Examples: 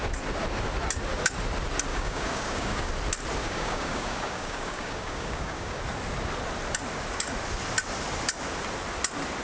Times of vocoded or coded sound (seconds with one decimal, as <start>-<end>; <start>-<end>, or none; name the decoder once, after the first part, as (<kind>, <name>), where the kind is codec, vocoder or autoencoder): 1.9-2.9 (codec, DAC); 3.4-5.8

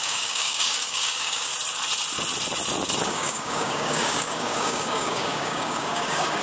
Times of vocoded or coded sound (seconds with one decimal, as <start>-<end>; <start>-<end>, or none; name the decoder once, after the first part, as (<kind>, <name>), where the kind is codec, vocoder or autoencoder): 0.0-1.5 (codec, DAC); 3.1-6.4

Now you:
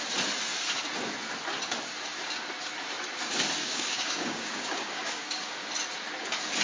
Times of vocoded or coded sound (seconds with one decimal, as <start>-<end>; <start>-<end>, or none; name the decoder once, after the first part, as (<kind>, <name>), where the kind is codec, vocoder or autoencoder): 3.6-5.7 (codec, DAC)